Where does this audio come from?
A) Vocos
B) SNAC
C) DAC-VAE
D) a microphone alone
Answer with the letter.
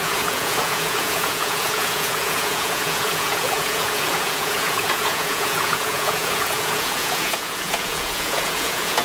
A